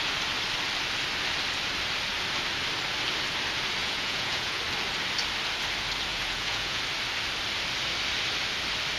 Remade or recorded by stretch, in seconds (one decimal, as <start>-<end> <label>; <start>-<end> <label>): 0.0-3.8 recorded; 3.8-4.6 remade; 4.6-6.1 recorded; 6.1-6.8 remade; 6.8-9.0 recorded